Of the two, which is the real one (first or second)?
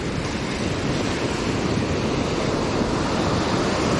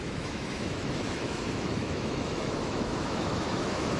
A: first